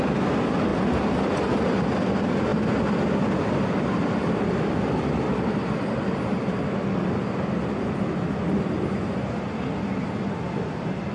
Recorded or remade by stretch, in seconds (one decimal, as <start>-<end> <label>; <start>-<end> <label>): 0.0-11.1 recorded